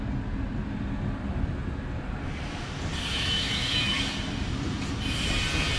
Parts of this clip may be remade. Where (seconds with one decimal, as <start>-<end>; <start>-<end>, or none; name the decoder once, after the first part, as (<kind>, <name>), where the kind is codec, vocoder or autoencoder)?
3.1-4.1 (autoencoder, DAC-VAE)